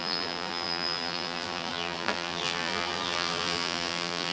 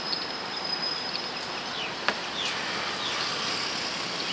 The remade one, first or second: first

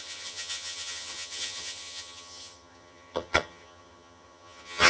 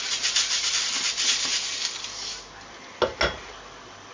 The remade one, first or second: first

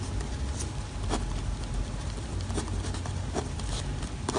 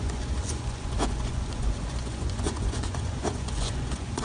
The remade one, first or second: second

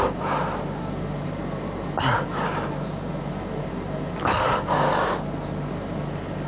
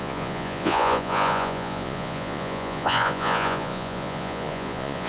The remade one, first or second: second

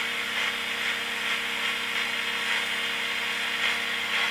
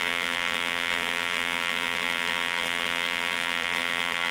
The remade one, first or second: second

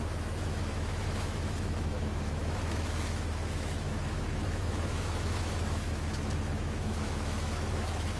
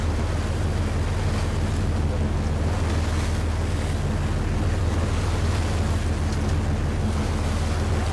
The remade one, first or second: first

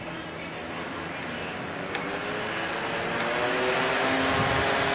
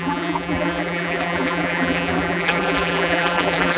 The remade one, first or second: second